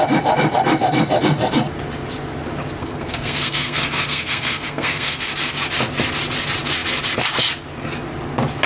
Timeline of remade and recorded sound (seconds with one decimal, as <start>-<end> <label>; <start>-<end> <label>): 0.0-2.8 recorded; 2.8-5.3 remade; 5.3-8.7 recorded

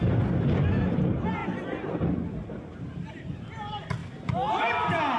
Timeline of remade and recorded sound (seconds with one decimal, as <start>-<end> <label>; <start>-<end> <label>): 0.0-5.2 recorded

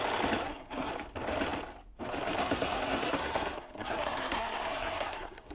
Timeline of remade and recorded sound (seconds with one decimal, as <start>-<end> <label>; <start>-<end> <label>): 0.0-0.4 recorded; 0.4-0.9 remade; 0.9-2.4 recorded; 2.4-5.5 remade

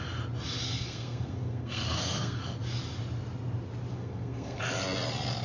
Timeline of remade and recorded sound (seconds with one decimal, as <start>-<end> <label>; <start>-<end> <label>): 0.0-0.6 recorded; 0.6-2.4 remade; 2.4-3.9 recorded; 3.9-4.6 remade; 4.6-5.4 recorded